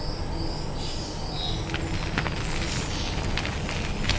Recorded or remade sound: recorded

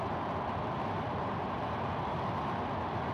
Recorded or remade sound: recorded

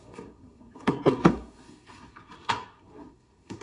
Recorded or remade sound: remade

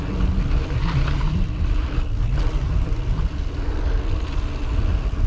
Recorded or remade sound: recorded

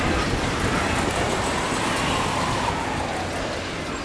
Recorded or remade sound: recorded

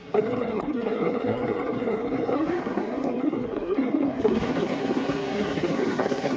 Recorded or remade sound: remade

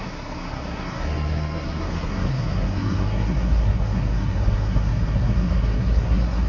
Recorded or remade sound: remade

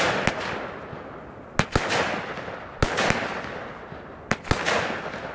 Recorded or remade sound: recorded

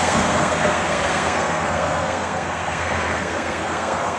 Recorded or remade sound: remade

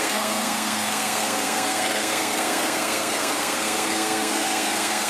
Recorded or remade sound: remade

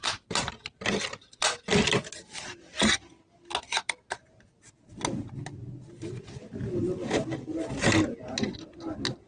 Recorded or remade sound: recorded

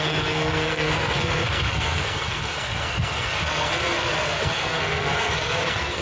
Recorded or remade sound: remade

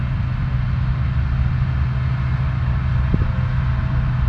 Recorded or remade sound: recorded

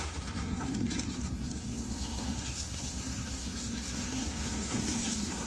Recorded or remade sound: remade